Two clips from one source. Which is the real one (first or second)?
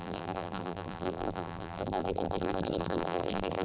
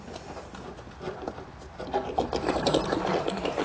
second